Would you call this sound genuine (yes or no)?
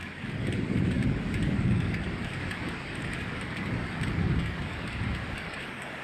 no